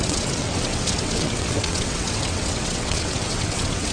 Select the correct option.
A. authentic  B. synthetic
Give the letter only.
B